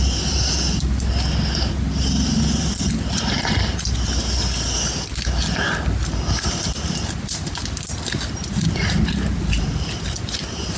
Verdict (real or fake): real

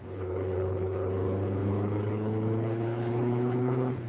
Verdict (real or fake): fake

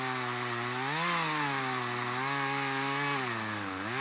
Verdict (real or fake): real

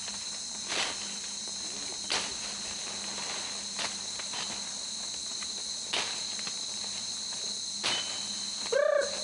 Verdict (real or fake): real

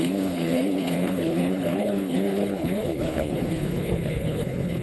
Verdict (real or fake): fake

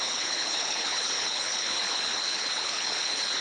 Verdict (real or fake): fake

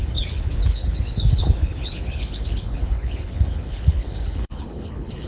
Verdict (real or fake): fake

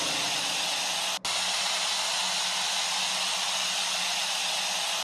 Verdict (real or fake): real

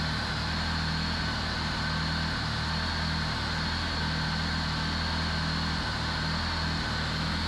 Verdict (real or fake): real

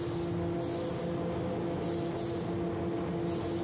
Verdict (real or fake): real